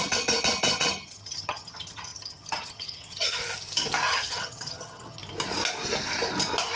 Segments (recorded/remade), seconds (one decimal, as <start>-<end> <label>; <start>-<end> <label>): 0.0-3.4 remade; 3.4-4.1 recorded; 4.1-5.2 remade; 5.2-6.8 recorded